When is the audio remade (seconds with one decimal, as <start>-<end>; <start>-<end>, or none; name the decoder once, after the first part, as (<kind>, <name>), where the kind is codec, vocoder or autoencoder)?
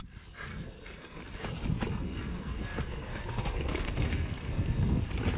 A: 0.5-1.2 (codec, SNAC); 1.9-5.0